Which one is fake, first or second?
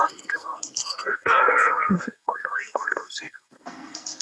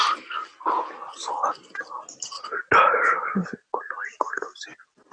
first